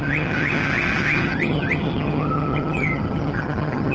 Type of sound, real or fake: fake